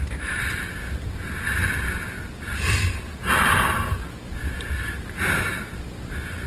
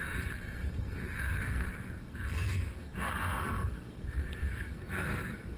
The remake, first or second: second